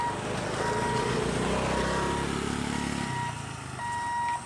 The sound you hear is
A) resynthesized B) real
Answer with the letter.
B